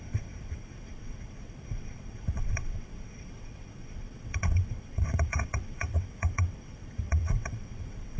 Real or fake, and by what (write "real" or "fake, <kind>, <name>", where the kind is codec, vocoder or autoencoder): fake, vocoder, WaveNeXt